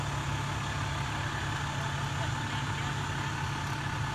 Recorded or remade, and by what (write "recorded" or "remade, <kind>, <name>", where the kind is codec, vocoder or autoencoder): recorded